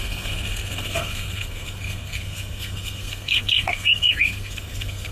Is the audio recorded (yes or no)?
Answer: no